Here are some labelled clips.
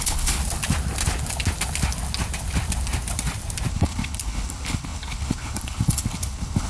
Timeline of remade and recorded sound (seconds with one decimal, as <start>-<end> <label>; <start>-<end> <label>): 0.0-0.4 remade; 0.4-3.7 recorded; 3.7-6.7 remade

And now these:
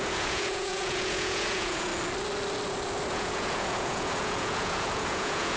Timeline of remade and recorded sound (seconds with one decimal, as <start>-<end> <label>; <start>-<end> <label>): 0.0-1.9 remade; 1.9-3.1 recorded; 3.1-5.6 remade

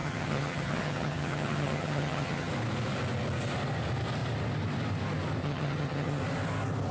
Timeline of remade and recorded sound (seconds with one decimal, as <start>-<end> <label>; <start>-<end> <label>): 0.0-2.5 remade; 2.5-5.4 recorded; 5.4-6.2 remade; 6.2-6.9 recorded

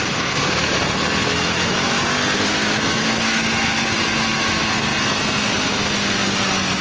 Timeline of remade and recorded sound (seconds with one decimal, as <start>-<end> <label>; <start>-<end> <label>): 0.0-1.2 recorded; 1.2-2.0 remade; 2.0-2.5 recorded; 2.5-4.5 remade; 4.5-6.8 recorded